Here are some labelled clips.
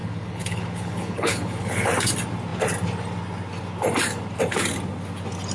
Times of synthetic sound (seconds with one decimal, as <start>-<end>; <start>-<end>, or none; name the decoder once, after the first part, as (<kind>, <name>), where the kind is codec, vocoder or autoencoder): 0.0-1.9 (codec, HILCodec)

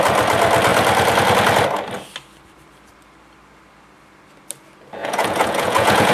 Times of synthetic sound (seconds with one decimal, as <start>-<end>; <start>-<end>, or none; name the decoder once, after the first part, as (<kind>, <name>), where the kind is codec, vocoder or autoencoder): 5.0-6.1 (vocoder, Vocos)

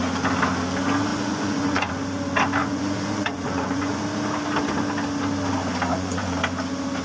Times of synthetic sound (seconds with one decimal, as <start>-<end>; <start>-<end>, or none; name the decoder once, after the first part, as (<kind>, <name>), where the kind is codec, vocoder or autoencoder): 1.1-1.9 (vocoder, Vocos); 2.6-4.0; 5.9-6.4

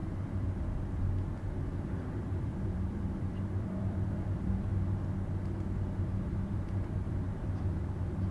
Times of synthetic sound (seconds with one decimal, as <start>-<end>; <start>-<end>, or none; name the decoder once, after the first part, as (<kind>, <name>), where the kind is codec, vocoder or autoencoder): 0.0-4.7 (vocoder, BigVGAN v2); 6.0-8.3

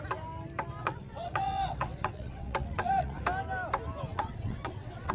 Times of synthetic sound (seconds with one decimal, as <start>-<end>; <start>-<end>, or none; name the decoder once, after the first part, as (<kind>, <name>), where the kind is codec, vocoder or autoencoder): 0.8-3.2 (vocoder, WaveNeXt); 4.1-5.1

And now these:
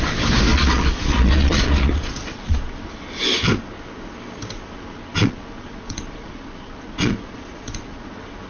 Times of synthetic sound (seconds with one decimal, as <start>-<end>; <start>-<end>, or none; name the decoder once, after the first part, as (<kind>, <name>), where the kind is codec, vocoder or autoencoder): 0.5-2.8 (vocoder, Vocos); 5.1-8.1

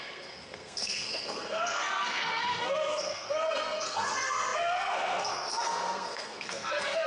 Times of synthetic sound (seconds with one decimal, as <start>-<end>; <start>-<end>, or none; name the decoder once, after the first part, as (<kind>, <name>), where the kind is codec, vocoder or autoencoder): 0.0-7.1 (codec, SNAC)